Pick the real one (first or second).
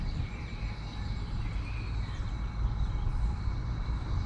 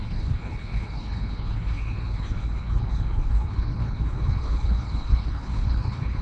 first